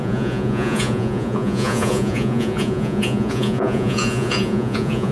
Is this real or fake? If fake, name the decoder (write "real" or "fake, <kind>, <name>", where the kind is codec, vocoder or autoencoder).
fake, vocoder, Vocos